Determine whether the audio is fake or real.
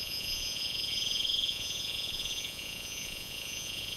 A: fake